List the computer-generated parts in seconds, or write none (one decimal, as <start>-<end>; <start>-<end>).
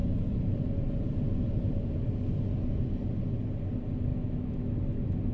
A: 4.1-4.7